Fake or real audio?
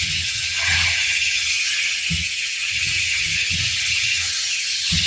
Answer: fake